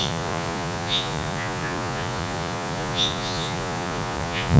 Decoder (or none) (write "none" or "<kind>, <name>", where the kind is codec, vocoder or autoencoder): vocoder, Vocos